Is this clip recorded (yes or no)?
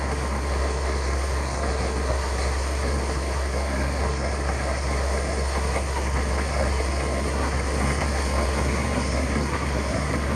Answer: no